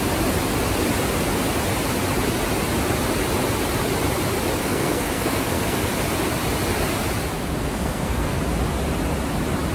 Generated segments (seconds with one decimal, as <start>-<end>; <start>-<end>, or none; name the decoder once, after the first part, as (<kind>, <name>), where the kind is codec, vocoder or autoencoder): 4.6-5.9 (codec, SNAC); 7.6-8.4